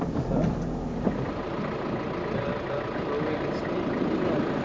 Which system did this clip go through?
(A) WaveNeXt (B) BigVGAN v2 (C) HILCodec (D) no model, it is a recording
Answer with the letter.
D